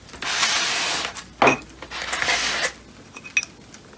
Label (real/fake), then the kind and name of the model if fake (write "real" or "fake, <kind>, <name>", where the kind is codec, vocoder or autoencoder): real